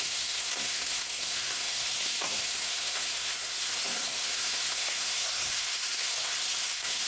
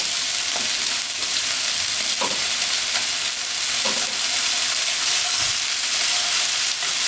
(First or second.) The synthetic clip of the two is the first